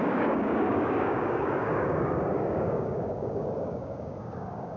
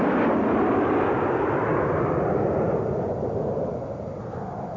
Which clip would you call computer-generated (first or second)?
first